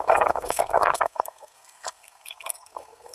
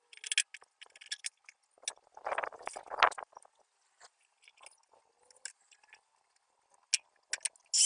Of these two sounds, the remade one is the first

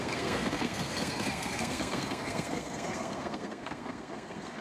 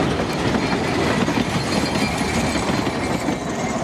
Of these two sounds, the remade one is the first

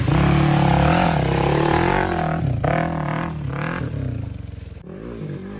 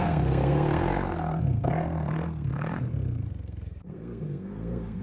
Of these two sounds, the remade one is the second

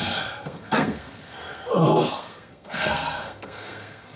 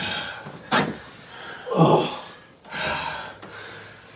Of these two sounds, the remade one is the first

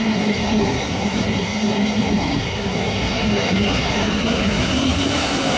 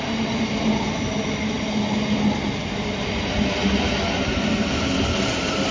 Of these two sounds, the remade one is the first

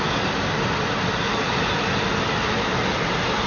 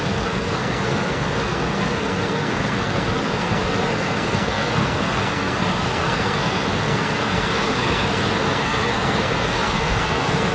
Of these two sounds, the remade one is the second